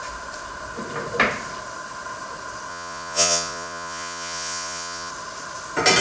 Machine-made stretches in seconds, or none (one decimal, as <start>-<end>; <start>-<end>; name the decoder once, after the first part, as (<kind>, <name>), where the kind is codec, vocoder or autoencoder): 2.7-5.1 (vocoder, Vocos)